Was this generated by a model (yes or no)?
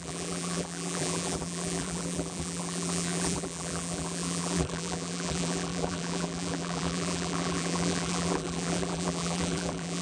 yes